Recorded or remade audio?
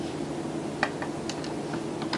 recorded